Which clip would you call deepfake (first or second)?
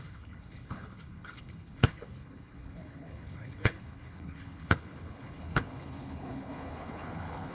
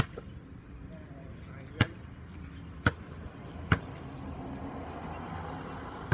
first